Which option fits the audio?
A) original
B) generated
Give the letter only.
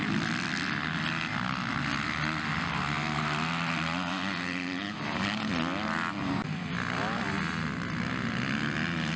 A